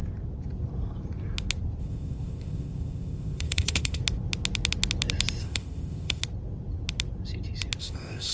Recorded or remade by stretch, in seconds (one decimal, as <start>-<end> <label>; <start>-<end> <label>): 0.0-1.8 recorded; 1.8-4.0 remade; 4.0-5.4 recorded; 5.4-6.2 remade; 6.2-7.8 recorded; 7.8-8.3 remade